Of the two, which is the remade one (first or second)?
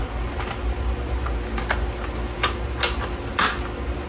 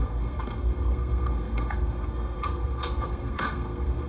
second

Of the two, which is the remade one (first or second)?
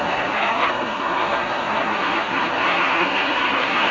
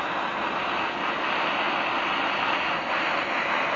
first